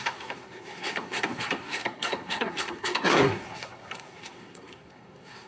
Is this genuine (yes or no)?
no